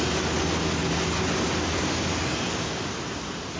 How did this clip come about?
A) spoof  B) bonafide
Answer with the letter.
B